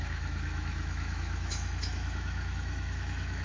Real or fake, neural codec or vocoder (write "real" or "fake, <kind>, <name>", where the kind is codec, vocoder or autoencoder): fake, autoencoder, DAC-VAE